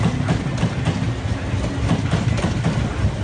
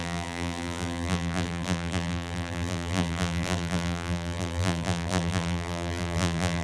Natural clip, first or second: first